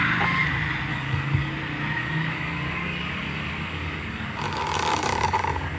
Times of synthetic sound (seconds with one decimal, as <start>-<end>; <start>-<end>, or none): 0.9-1.5; 2.0-5.8

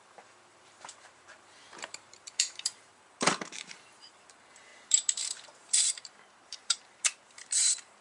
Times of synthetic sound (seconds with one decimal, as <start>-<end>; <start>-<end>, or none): 0.0-8.0